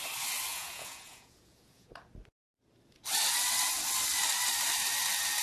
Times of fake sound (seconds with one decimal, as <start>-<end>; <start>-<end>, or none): 0.5-1.9